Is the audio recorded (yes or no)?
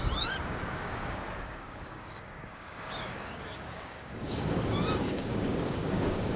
no